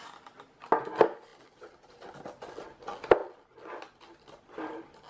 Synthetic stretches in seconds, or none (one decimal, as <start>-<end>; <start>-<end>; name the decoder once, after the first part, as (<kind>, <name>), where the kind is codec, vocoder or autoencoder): none